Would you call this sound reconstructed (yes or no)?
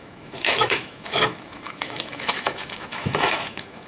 yes